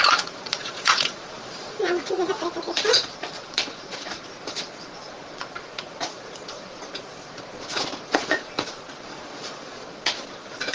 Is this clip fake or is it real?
fake